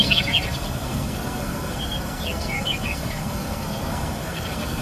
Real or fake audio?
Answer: fake